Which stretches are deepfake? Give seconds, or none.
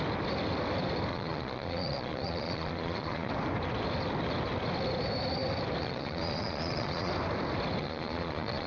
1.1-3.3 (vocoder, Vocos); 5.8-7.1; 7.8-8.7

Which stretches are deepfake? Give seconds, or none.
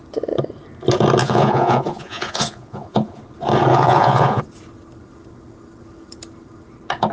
1.2-3.2 (vocoder, Vocos); 3.7-4.4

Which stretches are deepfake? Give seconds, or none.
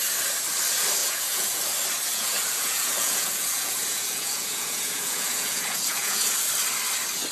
1.0-1.6 (vocoder, Vocos); 2.1-6.5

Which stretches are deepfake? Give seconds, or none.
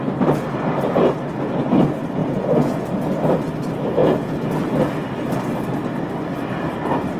2.2-2.9 (vocoder, Vocos); 4.0-4.5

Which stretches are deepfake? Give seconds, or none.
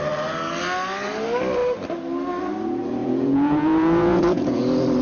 3.0-4.6 (vocoder, Vocos)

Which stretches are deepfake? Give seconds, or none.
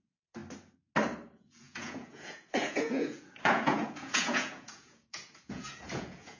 0.0-0.4 (vocoder, Vocos); 1.4-6.4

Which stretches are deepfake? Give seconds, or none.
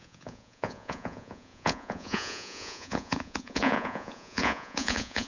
0.0-5.3 (vocoder, Vocos)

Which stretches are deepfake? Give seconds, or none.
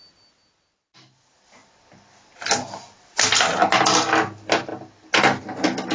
none